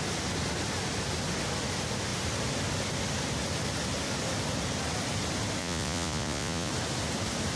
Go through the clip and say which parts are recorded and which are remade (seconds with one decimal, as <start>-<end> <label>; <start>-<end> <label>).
0.0-5.6 recorded; 5.6-6.7 remade; 6.7-7.6 recorded